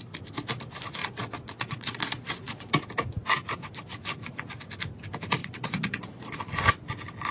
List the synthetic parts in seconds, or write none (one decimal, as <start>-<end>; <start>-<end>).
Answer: 1.0-2.7; 5.4-6.6